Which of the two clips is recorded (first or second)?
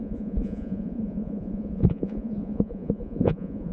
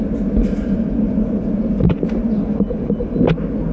second